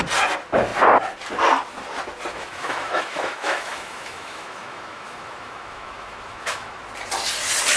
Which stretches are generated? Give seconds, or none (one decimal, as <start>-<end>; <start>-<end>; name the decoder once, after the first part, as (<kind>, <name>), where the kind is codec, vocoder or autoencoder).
2.3-6.8 (autoencoder, DAC-VAE)